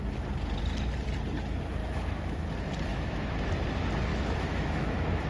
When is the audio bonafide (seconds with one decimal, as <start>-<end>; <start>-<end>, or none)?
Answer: 0.0-1.8; 2.5-2.9; 3.5-4.1